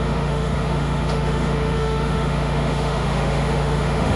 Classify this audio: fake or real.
fake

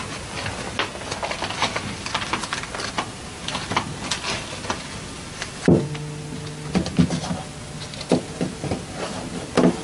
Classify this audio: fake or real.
real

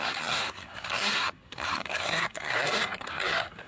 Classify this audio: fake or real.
fake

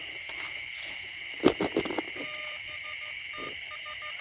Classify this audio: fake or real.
real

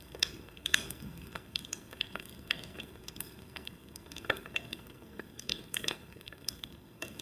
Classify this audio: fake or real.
fake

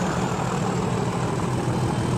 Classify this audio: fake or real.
real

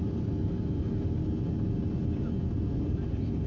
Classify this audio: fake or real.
real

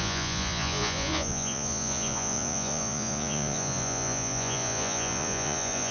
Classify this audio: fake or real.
fake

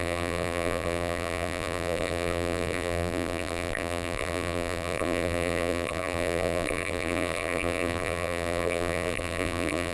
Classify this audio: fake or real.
fake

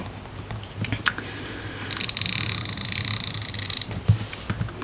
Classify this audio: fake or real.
real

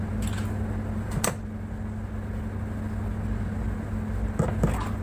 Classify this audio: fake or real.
real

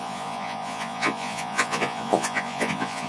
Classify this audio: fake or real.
fake